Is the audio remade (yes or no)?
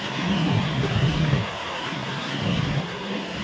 yes